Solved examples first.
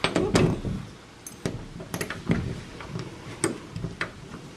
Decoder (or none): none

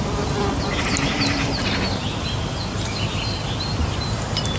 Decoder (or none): none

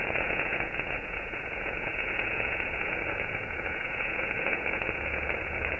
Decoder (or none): vocoder, Vocos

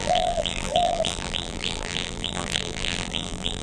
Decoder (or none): vocoder, BigVGAN v2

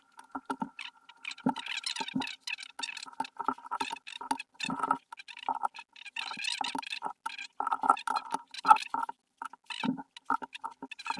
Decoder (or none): none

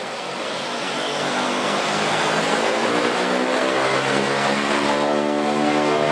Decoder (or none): codec, SNAC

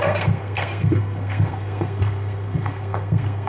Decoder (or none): codec, SNAC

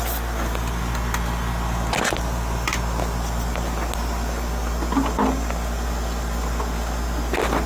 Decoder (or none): none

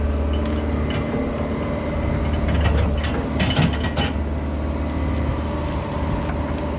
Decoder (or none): none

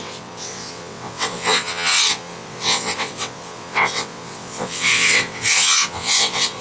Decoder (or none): vocoder, WaveNeXt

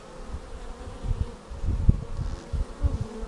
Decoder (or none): none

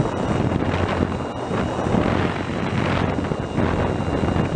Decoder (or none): none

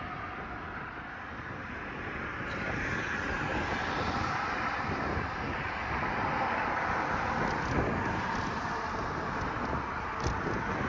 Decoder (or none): none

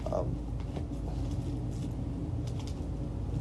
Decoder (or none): none